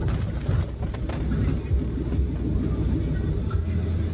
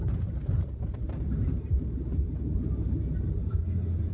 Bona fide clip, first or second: first